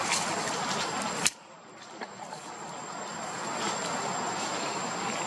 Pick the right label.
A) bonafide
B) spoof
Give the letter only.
A